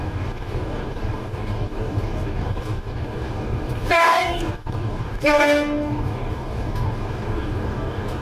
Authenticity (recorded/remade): remade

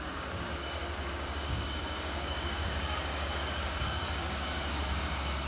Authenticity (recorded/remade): remade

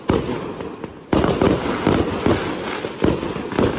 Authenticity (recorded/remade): recorded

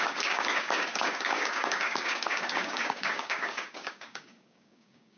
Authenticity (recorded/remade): remade